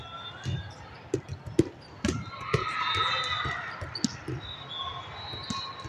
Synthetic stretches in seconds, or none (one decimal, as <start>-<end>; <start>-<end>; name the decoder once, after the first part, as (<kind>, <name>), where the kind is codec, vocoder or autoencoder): none